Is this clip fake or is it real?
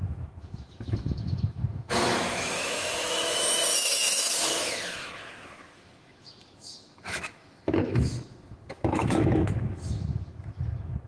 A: fake